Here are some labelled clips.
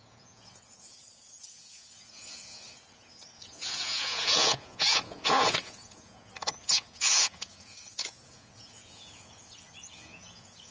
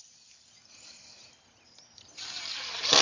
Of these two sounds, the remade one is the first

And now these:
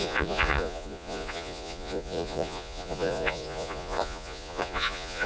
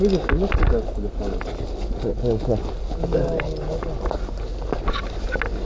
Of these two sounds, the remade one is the first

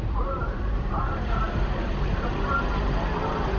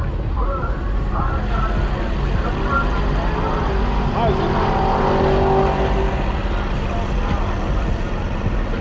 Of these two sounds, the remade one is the first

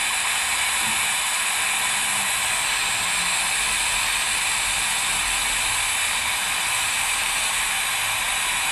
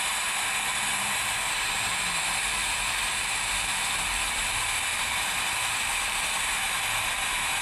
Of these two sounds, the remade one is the second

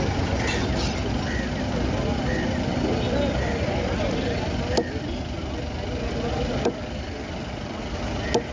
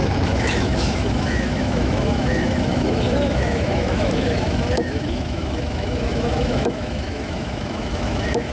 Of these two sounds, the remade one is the second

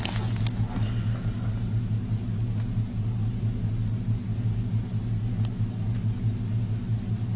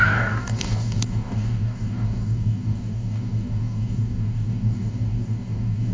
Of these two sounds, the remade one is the second